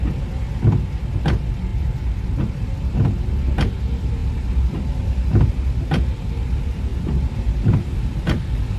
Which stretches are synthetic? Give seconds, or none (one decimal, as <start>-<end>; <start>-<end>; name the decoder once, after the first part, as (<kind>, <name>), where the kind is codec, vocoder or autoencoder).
1.7-2.3 (vocoder, BigVGAN v2); 6.9-8.4